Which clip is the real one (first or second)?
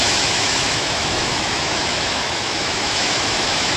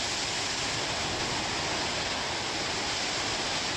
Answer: second